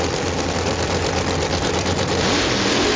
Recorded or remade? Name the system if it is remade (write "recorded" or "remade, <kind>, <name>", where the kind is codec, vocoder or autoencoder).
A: recorded